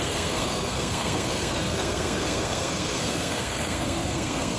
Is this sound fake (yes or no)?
yes